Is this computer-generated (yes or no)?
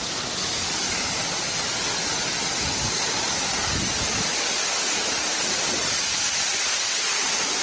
no